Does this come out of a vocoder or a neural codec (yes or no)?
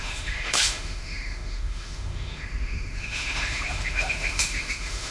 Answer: yes